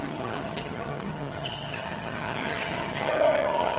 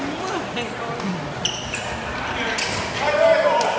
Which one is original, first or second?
second